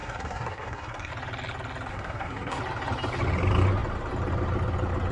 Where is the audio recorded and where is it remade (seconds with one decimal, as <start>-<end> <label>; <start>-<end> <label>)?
0.0-1.1 remade; 1.1-1.9 recorded; 1.9-2.6 remade; 2.6-5.1 recorded